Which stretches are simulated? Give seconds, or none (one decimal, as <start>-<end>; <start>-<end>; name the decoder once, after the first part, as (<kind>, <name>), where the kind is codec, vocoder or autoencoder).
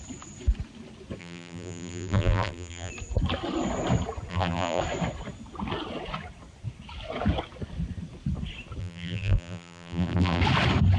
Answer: 1.2-2.9 (vocoder, BigVGAN v2); 4.3-4.8; 8.8-10.4